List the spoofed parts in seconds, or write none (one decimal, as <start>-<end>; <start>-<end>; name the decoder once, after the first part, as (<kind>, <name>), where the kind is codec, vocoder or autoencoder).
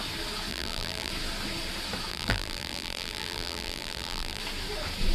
0.5-1.1 (vocoder, BigVGAN v2); 2.1-4.4